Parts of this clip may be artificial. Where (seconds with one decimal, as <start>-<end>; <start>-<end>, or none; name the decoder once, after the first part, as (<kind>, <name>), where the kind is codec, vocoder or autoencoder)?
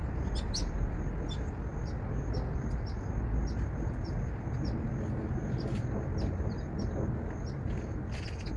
none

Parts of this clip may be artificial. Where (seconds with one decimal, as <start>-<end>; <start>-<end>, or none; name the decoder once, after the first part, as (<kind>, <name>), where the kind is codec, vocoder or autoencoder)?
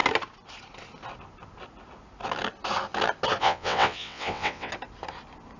3.4-4.7 (vocoder, WaveNeXt)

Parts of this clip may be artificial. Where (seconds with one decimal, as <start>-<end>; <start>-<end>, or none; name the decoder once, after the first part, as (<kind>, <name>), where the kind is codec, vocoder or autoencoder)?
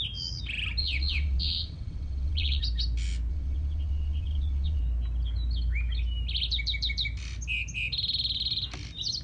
0.8-2.6 (vocoder, WaveNeXt); 3.3-4.8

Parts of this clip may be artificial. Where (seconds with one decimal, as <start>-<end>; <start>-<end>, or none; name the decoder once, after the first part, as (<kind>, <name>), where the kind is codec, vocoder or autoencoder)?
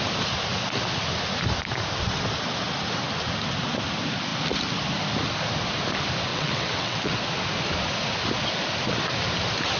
6.3-7.2 (vocoder, WaveNeXt)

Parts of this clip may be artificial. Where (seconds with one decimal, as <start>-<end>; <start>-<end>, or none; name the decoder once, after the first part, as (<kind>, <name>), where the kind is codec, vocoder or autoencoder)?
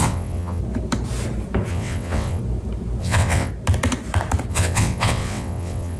0.0-0.6 (vocoder, WaveNeXt); 1.7-2.4; 3.0-3.5; 4.5-6.0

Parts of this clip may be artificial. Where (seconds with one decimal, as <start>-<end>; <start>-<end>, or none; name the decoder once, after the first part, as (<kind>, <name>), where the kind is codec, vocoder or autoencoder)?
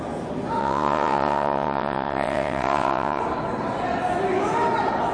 0.6-3.2 (vocoder, WaveNeXt)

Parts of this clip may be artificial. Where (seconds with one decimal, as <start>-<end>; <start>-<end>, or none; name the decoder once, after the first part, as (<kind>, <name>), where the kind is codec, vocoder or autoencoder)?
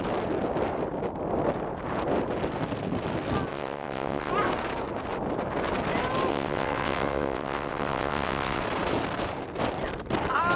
3.5-4.3 (vocoder, WaveNeXt); 6.3-8.6